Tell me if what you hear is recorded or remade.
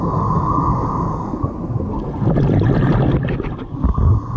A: recorded